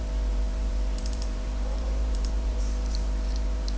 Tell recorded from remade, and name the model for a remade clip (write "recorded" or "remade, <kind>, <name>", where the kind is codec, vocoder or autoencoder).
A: remade, vocoder, BigVGAN v2